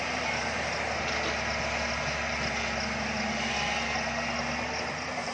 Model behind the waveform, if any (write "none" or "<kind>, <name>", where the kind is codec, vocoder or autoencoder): vocoder, BigVGAN v2